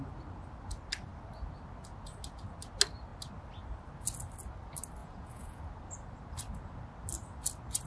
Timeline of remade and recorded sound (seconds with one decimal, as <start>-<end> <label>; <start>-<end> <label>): 0.0-5.0 recorded; 5.0-5.6 remade; 5.6-7.9 recorded